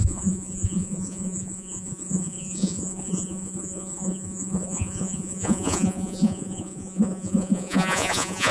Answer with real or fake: fake